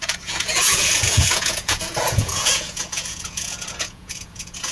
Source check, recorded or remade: remade